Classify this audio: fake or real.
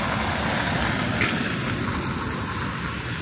real